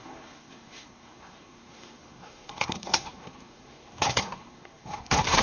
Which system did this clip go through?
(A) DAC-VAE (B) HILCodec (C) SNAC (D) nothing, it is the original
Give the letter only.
C